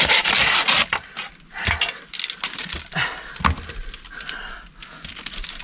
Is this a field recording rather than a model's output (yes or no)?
yes